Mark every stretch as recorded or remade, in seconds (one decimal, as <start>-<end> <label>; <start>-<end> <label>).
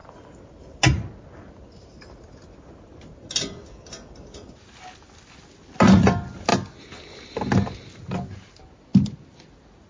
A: 0.0-9.9 recorded